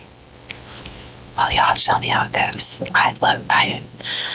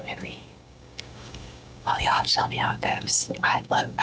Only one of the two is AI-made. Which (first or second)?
second